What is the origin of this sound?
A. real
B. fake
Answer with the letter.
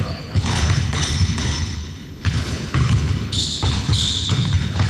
B